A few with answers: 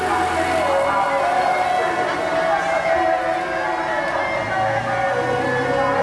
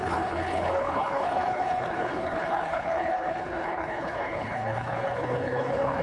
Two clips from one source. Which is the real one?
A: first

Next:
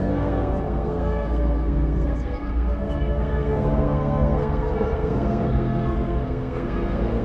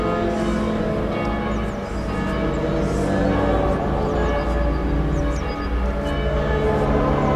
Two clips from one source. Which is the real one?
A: second